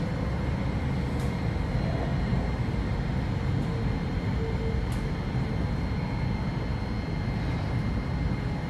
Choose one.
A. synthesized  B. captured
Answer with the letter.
B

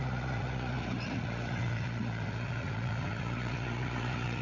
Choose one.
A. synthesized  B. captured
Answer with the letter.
A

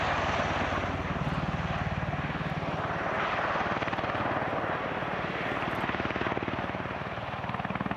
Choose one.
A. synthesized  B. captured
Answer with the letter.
B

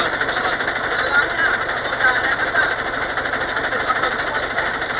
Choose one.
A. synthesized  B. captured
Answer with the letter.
A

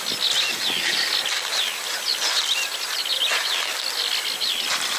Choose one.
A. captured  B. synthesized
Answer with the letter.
A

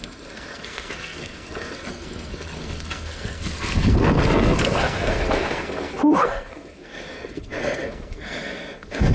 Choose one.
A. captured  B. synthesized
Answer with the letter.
B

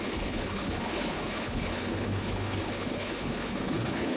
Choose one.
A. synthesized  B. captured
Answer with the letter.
A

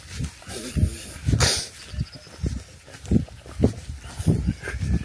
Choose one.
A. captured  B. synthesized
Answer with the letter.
A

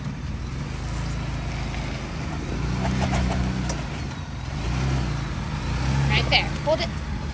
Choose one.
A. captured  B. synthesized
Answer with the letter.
A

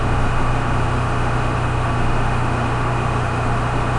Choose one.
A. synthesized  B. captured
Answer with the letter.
A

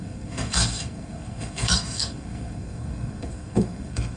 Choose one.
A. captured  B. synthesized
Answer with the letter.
B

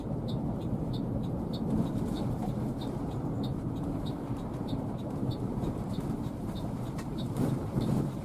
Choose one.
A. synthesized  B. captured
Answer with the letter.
A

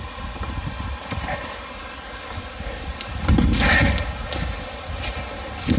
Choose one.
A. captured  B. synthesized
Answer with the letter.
A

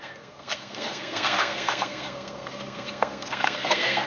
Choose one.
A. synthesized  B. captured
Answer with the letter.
A